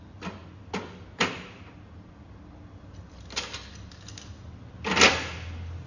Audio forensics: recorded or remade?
recorded